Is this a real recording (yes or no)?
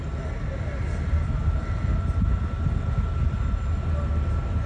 yes